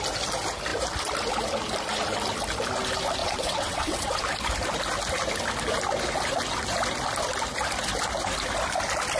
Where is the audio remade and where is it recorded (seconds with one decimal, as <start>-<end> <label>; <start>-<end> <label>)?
0.0-3.2 recorded; 3.2-4.2 remade; 4.2-9.2 recorded